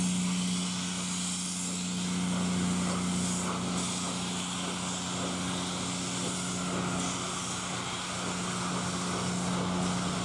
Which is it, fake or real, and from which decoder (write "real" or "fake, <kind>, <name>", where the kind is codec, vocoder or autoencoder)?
real